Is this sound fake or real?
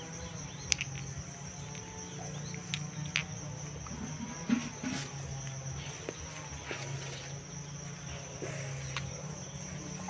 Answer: real